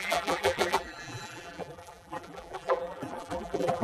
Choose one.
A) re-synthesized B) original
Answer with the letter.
A